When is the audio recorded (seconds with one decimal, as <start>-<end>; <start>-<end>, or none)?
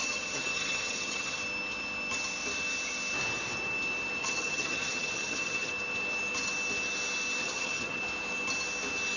1.4-4.2; 5.7-7.4; 8.0-9.2